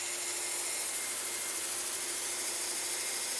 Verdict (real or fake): real